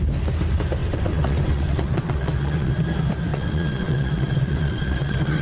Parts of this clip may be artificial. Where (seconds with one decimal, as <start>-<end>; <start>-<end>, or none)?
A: 0.8-2.7; 3.3-5.4